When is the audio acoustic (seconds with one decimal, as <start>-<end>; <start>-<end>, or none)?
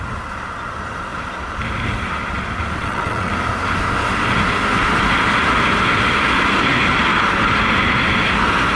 0.0-2.8; 3.3-8.8